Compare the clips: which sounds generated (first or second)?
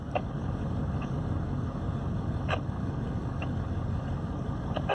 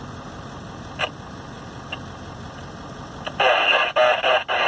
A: first